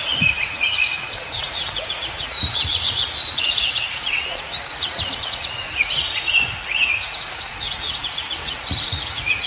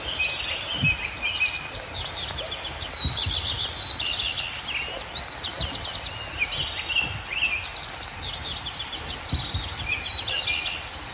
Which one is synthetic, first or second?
first